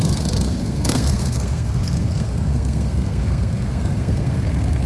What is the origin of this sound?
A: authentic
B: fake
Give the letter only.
B